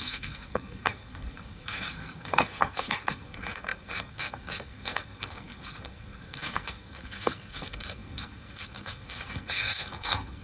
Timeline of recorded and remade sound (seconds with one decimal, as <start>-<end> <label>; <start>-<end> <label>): 0.0-10.4 remade